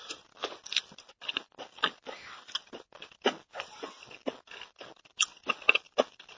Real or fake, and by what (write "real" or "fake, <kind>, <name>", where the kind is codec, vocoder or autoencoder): real